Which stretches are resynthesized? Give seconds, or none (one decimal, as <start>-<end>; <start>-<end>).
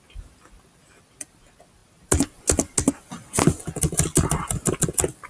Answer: none